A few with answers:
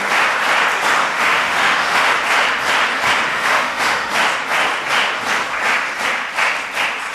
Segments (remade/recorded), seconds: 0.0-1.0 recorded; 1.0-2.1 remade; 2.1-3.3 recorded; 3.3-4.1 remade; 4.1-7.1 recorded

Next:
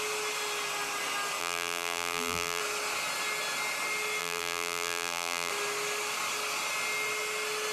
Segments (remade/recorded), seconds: 0.0-1.4 recorded; 1.4-2.6 remade; 2.6-4.2 recorded; 4.2-5.5 remade; 5.5-7.7 recorded

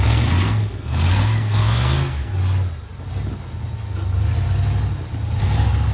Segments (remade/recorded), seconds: 0.0-2.3 remade; 2.3-5.4 recorded; 5.4-5.9 remade

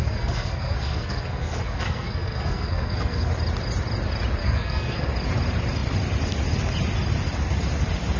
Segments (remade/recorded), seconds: 0.0-3.3 remade; 3.3-4.4 recorded; 4.4-5.1 remade; 5.1-8.2 recorded

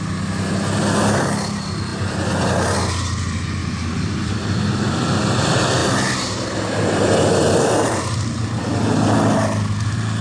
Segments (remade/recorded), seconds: 0.0-10.2 recorded

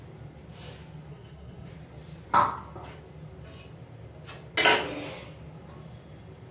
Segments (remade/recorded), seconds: 0.0-1.1 recorded; 1.1-1.7 remade; 1.7-6.5 recorded

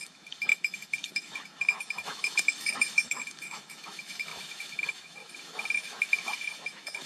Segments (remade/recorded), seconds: 0.0-7.1 remade

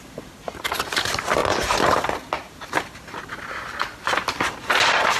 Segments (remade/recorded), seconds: 0.0-5.2 recorded